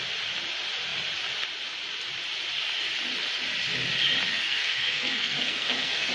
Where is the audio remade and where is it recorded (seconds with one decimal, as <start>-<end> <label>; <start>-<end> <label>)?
0.0-4.3 recorded; 4.3-6.1 remade